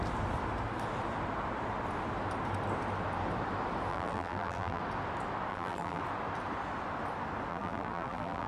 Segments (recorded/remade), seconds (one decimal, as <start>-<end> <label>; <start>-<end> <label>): 0.0-3.9 recorded; 3.9-4.8 remade; 4.8-5.5 recorded; 5.5-6.0 remade; 6.0-7.5 recorded; 7.5-8.5 remade